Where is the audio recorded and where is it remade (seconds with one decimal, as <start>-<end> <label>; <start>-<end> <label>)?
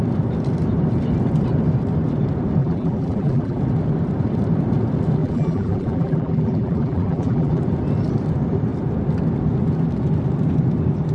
0.0-2.6 recorded; 2.6-3.6 remade; 3.6-5.2 recorded; 5.2-7.6 remade; 7.6-11.1 recorded